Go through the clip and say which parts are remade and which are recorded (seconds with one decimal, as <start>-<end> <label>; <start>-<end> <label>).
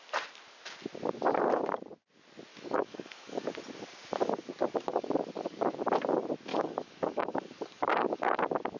0.0-2.5 recorded; 2.5-3.4 remade; 3.4-4.9 recorded; 4.9-5.8 remade; 5.8-6.5 recorded; 6.5-8.4 remade; 8.4-8.8 recorded